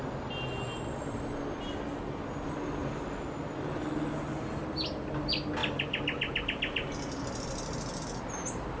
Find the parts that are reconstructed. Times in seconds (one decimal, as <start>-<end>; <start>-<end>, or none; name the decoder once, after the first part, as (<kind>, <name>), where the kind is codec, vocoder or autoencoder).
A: none